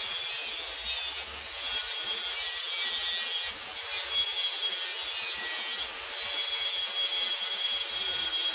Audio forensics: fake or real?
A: real